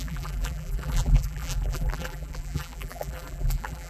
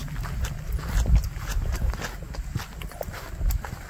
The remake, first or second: first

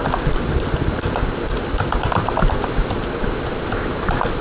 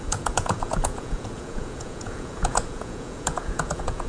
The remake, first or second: second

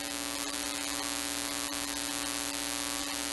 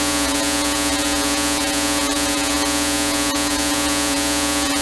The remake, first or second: second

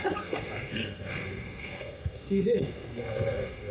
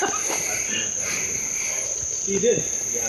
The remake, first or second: first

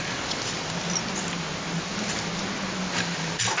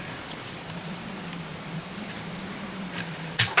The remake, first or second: second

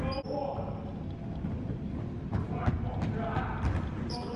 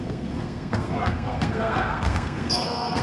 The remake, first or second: second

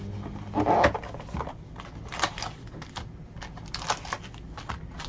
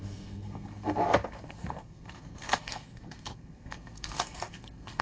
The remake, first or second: second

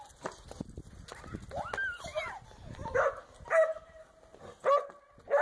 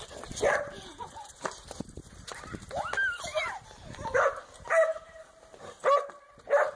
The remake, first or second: second